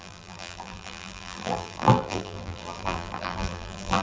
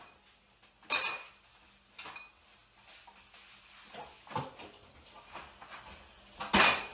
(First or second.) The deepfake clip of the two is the first